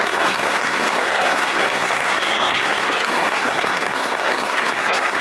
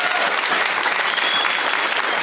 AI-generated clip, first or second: first